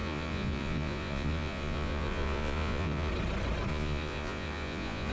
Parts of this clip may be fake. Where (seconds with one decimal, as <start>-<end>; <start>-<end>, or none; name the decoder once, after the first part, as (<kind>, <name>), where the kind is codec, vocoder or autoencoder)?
0.0-3.1 (vocoder, Vocos); 3.7-5.1